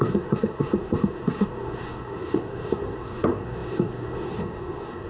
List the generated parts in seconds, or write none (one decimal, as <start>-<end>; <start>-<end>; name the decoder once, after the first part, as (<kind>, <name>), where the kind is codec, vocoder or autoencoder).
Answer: 0.0-5.1 (codec, SNAC)